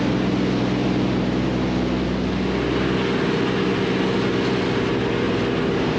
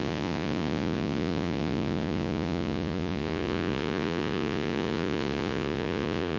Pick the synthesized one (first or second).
second